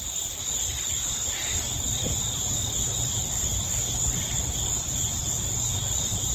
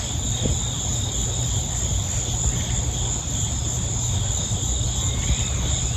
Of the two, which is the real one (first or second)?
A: second